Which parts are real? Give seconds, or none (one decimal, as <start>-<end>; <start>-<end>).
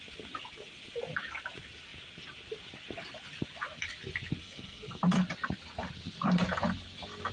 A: 0.0-4.4; 5.0-7.3